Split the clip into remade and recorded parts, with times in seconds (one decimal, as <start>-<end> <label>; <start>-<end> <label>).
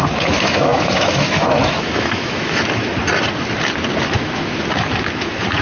0.0-2.9 remade; 2.9-4.0 recorded; 4.0-5.6 remade